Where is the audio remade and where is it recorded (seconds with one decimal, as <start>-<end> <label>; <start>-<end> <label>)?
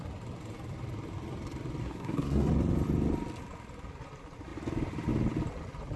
0.0-1.8 recorded; 1.8-2.5 remade; 2.5-6.0 recorded